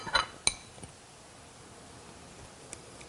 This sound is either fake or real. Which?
real